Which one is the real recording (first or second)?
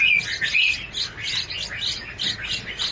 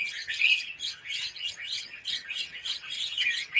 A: first